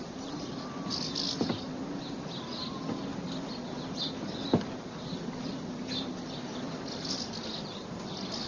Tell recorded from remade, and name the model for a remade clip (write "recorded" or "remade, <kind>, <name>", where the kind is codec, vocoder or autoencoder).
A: recorded